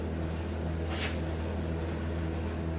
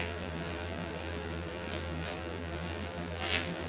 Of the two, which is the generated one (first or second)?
second